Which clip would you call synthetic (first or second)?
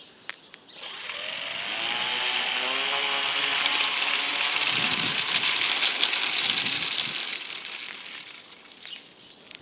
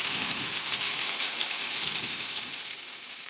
second